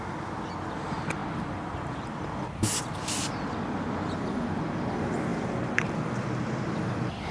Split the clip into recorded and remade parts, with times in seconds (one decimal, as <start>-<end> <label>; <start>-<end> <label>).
0.0-1.2 recorded; 1.2-3.4 remade; 3.4-5.3 recorded; 5.3-7.3 remade